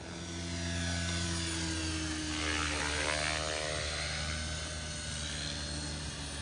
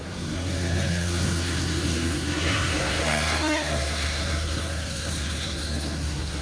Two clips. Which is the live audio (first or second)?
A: first